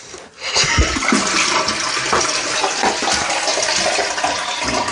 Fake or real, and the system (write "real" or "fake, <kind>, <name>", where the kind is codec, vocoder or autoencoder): real